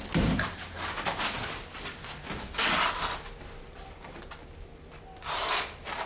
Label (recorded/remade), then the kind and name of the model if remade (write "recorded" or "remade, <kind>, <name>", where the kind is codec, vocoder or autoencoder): recorded